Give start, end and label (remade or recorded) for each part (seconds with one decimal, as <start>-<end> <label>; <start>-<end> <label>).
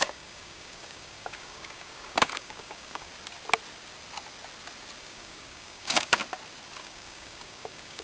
0.0-3.1 remade; 3.1-5.0 recorded; 5.0-6.2 remade; 6.2-6.8 recorded; 6.8-8.0 remade